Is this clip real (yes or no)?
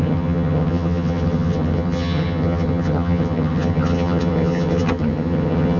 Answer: no